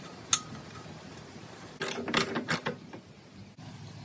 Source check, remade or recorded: recorded